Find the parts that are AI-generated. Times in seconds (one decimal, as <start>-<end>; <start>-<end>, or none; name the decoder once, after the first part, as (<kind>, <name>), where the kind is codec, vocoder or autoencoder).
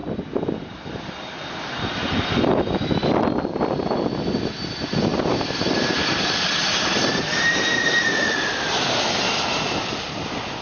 5.1-9.3 (vocoder, BigVGAN v2)